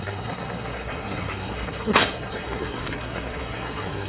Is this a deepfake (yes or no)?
yes